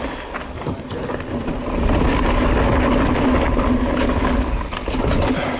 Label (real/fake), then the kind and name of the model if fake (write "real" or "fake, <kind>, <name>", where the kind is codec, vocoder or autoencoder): real